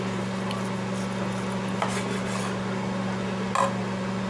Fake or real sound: real